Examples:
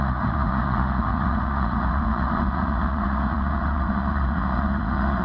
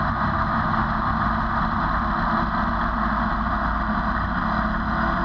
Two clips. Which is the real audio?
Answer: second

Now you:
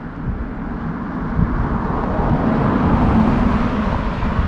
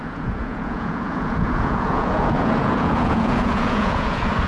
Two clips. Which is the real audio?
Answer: first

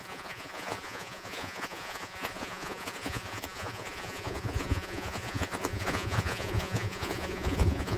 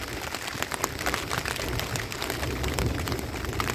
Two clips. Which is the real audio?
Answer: second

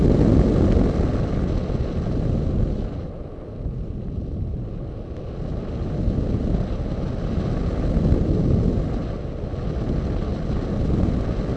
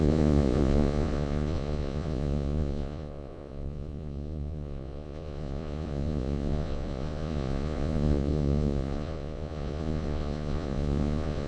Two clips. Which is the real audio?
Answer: first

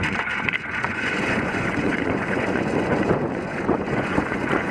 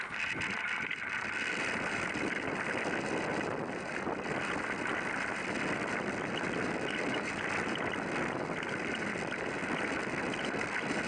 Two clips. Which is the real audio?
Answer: second